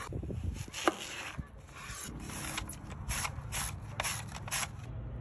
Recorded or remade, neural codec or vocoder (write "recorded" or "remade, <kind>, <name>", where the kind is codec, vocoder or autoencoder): recorded